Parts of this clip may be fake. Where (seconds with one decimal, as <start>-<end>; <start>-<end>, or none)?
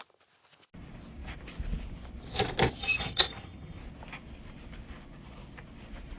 2.8-3.8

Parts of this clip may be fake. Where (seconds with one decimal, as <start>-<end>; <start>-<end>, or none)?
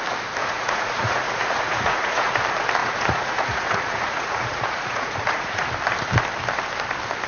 0.4-2.3; 2.8-5.7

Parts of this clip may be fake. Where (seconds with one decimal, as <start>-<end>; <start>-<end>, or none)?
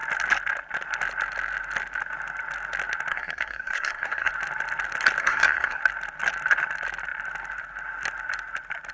3.1-4.3; 5.2-5.8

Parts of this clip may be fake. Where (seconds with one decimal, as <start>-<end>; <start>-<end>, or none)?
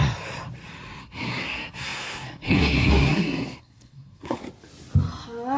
1.0-4.4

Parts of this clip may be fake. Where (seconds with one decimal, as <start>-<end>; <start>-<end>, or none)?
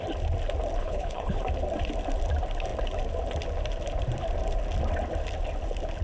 0.8-1.4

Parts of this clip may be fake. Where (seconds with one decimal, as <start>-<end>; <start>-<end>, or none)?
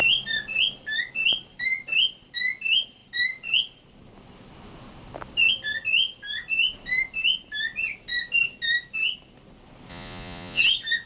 9.9-10.6